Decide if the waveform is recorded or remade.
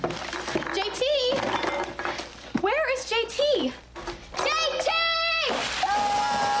recorded